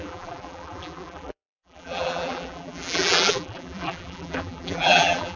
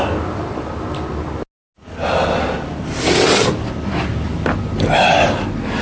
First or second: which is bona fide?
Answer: second